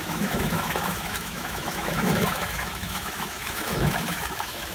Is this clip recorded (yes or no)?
no